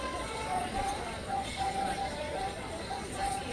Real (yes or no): no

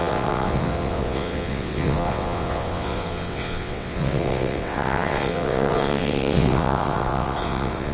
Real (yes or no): no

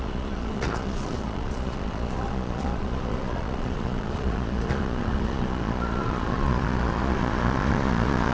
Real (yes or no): no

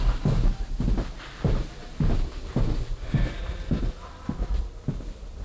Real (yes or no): yes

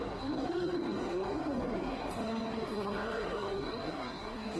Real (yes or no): no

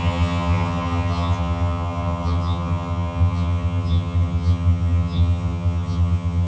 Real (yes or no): no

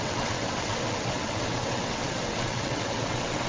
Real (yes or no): no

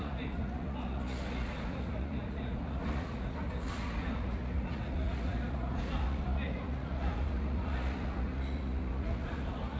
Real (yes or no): no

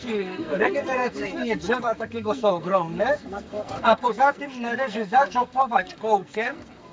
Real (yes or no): no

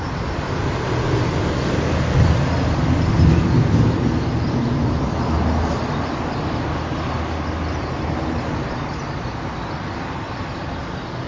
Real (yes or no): yes